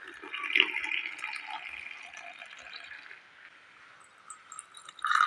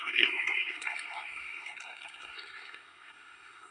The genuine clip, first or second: first